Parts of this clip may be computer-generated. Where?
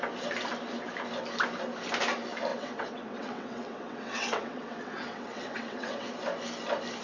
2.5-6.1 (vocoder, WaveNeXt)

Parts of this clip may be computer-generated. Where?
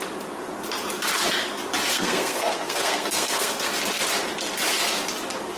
1.9-3.7 (codec, SNAC)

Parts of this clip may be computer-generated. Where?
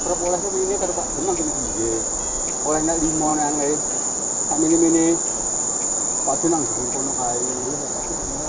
none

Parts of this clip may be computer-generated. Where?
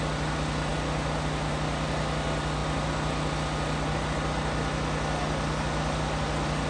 none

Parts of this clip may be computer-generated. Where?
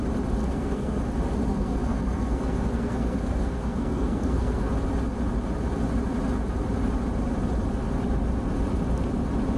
0.4-1.0 (codec, SNAC); 1.5-4.7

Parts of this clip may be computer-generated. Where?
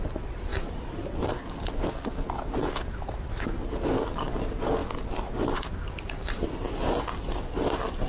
none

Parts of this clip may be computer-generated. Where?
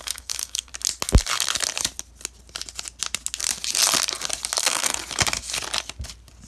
0.0-0.7 (codec, SNAC); 4.6-5.0